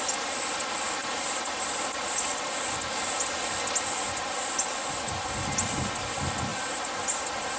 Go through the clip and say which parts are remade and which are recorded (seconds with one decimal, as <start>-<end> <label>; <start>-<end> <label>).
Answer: 0.0-1.0 recorded; 1.0-2.6 remade; 2.6-6.5 recorded; 6.5-7.6 remade